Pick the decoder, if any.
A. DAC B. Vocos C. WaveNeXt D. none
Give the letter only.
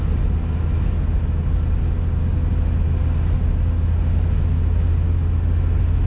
D